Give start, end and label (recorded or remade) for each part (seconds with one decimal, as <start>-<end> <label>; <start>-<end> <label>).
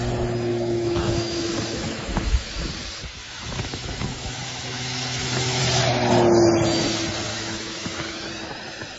0.0-0.5 recorded; 0.5-2.7 remade; 2.7-3.2 recorded; 3.2-5.6 remade; 5.6-7.3 recorded; 7.3-8.3 remade; 8.3-9.0 recorded